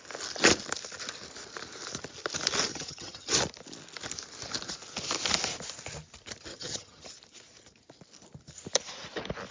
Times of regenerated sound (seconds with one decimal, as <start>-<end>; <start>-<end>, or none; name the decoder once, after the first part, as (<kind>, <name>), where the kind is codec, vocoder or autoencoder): 2.7-3.3 (vocoder, HiFi-GAN); 6.5-7.1